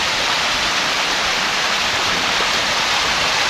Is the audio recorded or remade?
recorded